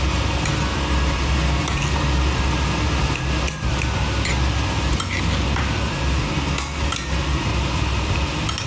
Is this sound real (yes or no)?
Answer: yes